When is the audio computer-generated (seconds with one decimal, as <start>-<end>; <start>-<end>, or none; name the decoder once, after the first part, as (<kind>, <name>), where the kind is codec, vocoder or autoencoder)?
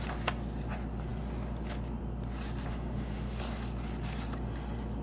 2.7-3.4 (autoencoder, DAC-VAE)